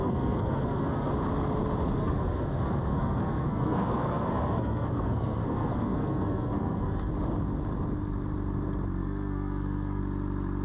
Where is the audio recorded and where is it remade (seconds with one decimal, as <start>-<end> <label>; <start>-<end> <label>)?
0.0-1.1 remade; 1.1-2.0 recorded; 2.0-7.1 remade; 7.1-9.0 recorded; 9.0-10.0 remade; 10.0-10.6 recorded